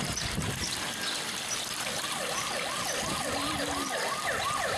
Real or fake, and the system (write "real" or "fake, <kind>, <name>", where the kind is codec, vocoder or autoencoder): real